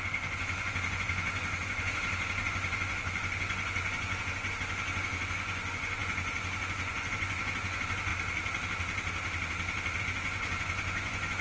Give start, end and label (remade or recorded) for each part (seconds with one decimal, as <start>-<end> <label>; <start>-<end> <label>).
0.0-8.1 remade; 8.1-10.0 recorded; 10.0-11.4 remade